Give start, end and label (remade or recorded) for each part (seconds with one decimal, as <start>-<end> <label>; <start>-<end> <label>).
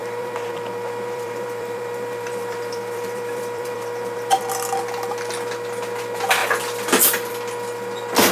0.0-4.4 remade; 4.4-8.3 recorded